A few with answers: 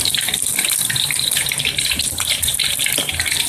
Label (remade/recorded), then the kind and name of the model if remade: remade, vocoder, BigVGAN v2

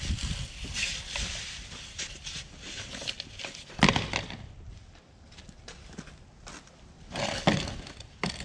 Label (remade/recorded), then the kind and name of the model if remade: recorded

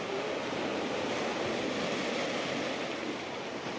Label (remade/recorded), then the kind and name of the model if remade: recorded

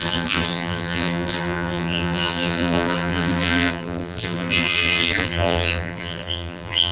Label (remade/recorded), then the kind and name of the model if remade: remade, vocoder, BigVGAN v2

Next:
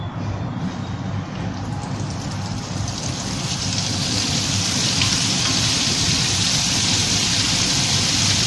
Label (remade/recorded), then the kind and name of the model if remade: remade, vocoder, BigVGAN v2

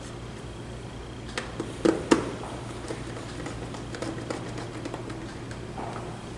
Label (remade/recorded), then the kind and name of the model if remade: recorded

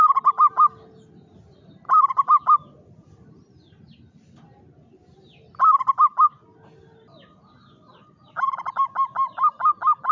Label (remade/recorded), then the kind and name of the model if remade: recorded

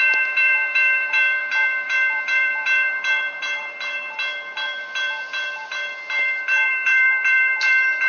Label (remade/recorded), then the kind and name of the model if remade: remade, vocoder, BigVGAN v2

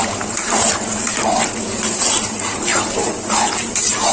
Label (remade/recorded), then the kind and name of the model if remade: remade, vocoder, BigVGAN v2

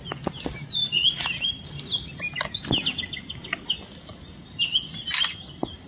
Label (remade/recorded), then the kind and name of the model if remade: recorded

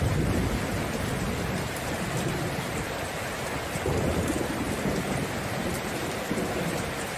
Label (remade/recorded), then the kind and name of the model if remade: remade, vocoder, BigVGAN v2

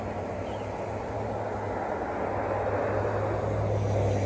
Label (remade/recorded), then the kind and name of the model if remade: recorded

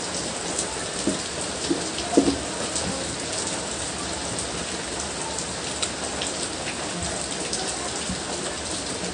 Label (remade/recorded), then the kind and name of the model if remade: recorded